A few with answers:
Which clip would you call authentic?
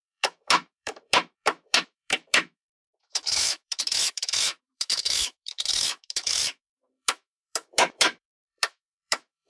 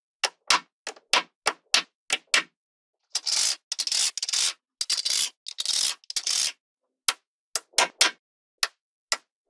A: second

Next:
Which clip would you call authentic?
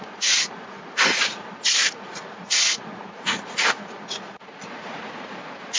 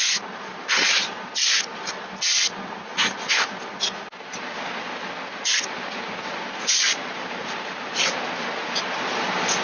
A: second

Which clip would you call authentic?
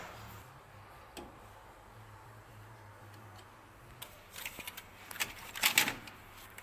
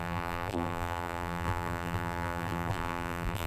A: first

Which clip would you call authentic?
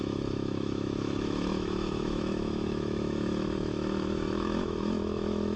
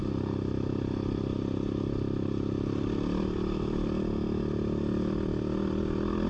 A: second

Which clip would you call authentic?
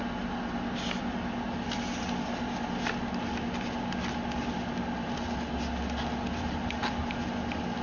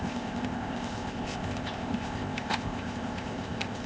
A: first